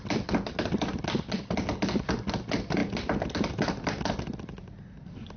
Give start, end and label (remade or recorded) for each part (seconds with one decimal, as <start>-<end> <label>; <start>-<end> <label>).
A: 0.0-5.4 recorded